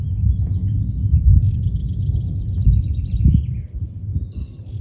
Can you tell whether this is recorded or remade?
recorded